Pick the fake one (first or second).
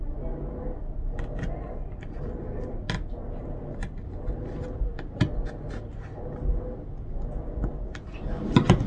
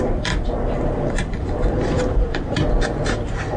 second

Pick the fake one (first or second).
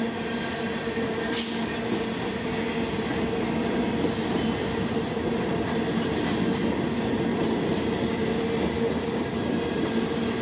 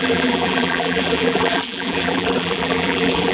second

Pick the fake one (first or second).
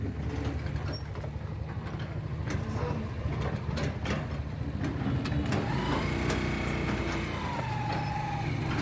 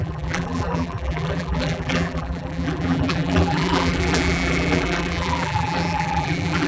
second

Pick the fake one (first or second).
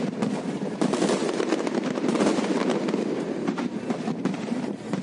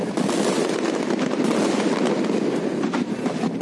second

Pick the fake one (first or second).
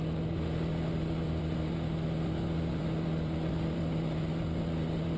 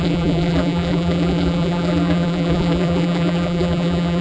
second